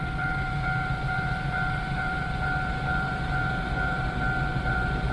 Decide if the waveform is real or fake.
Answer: fake